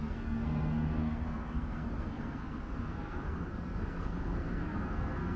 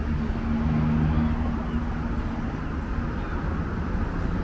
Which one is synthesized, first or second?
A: first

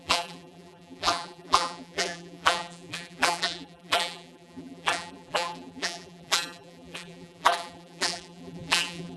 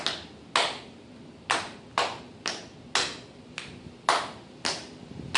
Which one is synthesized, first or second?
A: first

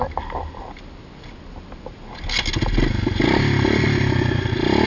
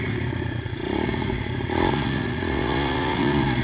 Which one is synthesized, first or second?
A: second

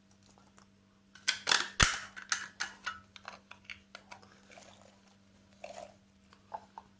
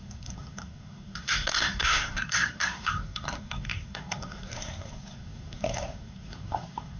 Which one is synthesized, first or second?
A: second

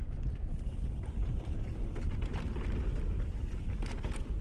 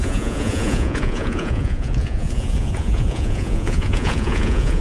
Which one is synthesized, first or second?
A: second